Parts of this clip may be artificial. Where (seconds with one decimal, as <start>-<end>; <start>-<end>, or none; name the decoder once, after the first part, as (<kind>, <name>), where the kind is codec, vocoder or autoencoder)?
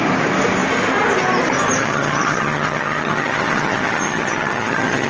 1.8-5.1 (vocoder, HiFi-GAN)